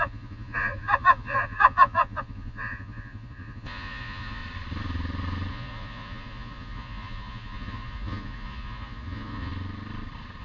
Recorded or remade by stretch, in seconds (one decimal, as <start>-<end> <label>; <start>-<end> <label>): 0.0-4.4 remade; 4.4-5.5 recorded; 5.5-9.5 remade; 9.5-10.4 recorded